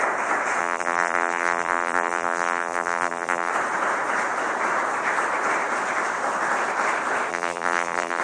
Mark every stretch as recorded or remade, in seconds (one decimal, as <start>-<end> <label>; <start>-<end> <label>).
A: 0.0-0.6 recorded; 0.6-3.5 remade; 3.5-7.3 recorded; 7.3-8.2 remade